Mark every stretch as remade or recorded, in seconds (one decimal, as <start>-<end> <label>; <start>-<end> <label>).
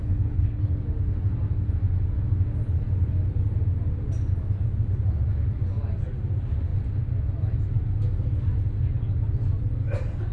0.0-0.6 remade; 0.6-10.3 recorded